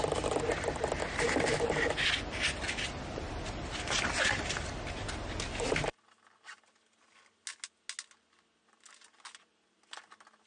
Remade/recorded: recorded